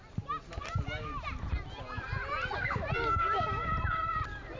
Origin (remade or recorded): recorded